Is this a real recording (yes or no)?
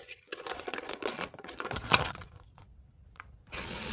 no